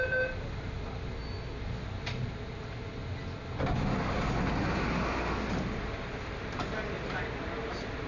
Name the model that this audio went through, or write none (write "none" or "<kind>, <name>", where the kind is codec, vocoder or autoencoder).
none